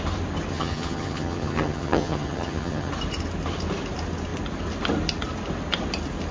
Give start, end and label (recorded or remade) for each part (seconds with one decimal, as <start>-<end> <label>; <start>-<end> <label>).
0.0-0.5 recorded; 0.5-2.9 remade; 2.9-6.3 recorded